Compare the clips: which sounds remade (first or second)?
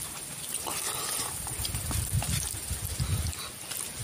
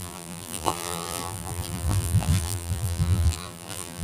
second